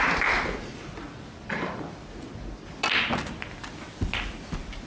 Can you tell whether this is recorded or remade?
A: remade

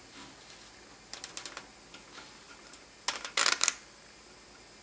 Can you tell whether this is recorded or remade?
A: recorded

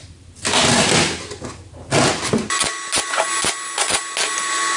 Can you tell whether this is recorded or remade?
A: recorded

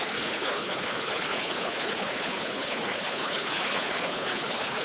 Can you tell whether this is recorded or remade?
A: remade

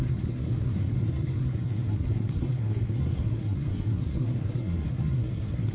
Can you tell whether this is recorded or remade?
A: remade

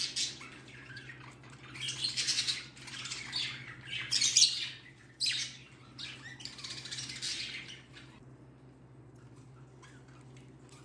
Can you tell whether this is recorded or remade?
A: recorded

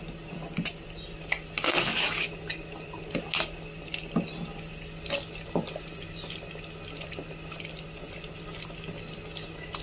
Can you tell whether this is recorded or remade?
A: recorded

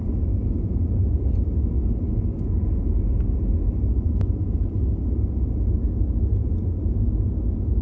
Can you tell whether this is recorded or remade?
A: recorded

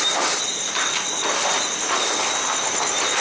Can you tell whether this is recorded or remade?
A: recorded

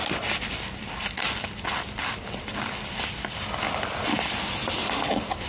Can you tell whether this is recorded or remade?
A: recorded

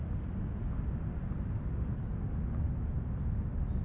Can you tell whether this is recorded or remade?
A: recorded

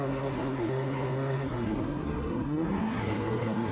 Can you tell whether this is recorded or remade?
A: remade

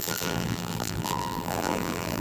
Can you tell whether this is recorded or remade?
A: remade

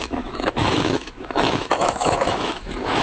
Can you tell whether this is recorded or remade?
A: remade